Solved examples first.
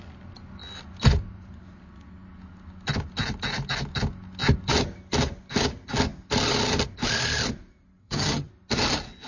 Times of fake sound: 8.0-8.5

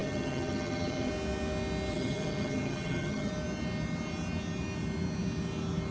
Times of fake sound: 0.0-1.1; 1.9-3.3